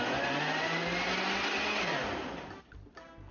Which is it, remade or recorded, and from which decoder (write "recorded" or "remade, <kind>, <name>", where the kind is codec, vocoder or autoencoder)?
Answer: recorded